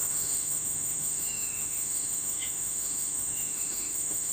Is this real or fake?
fake